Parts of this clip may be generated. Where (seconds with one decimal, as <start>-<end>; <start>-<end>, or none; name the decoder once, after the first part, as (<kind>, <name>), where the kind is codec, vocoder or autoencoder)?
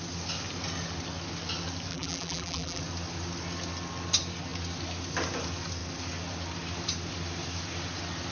1.9-2.8 (vocoder, BigVGAN v2)